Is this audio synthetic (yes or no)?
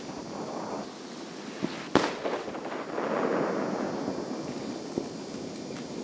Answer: no